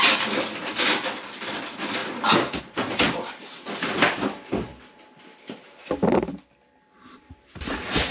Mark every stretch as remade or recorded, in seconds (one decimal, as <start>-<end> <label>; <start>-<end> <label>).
0.0-2.0 recorded; 2.0-2.6 remade; 2.6-4.7 recorded; 4.7-7.3 remade; 7.3-8.1 recorded